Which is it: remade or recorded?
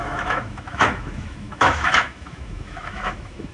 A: remade